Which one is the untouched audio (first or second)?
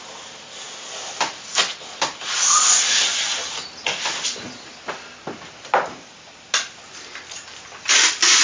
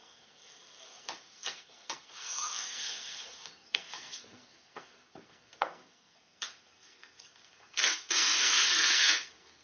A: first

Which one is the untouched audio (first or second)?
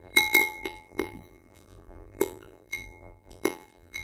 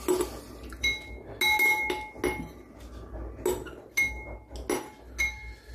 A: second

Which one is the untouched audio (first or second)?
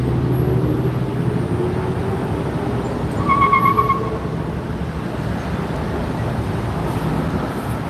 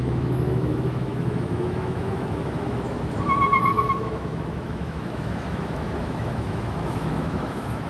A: first